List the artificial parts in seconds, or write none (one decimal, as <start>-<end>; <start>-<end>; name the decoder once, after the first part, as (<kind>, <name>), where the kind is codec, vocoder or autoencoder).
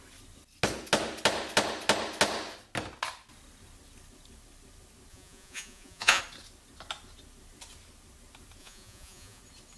5.1-6.2 (vocoder, Vocos); 8.6-9.4